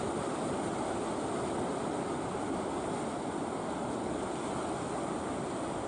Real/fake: real